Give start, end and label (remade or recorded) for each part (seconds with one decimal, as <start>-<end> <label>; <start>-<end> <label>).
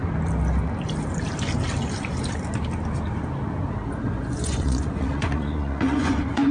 0.0-3.9 recorded; 3.9-6.5 remade